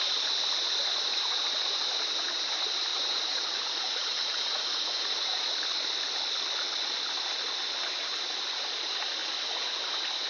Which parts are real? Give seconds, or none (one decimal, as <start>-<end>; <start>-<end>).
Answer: 0.0-2.9; 5.5-9.2; 9.8-10.3